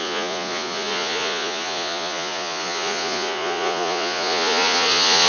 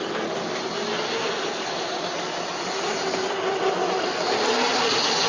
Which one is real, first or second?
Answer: second